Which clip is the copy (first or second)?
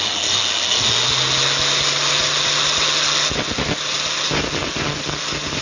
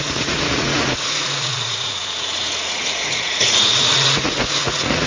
second